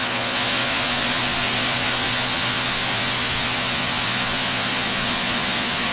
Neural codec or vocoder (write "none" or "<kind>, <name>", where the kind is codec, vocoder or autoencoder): vocoder, Vocos